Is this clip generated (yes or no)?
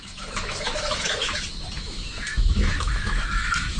yes